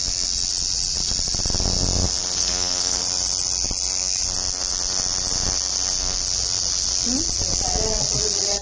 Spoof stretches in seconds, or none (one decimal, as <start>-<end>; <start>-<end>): 2.2-3.0